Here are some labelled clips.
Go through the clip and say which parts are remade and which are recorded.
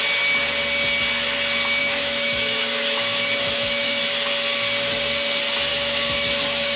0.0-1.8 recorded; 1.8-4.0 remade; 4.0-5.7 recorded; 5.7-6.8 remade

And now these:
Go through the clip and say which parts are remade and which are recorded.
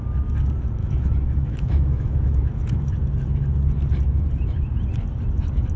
0.0-0.8 recorded; 0.8-2.4 remade; 2.4-5.8 recorded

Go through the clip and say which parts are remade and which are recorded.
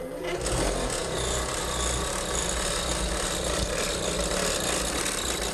0.0-5.5 recorded